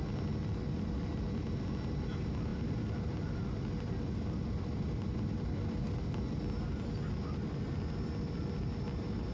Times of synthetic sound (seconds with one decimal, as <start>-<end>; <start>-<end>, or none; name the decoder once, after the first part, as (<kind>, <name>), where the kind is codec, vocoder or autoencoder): none